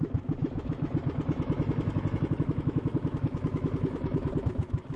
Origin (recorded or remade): remade